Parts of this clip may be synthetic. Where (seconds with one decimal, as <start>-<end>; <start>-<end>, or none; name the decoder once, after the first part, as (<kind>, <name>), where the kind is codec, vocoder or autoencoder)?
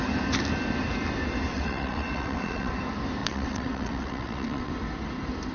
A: 1.5-2.7 (vocoder, WaveNeXt); 3.2-4.7